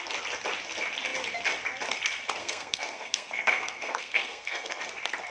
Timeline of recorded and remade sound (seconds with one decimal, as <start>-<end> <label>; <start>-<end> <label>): 0.0-2.4 recorded; 2.4-4.8 remade; 4.8-5.3 recorded